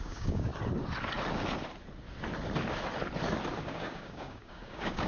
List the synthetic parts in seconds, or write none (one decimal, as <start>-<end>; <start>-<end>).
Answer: 0.0-0.5; 3.6-5.1